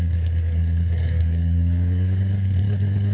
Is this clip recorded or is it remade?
remade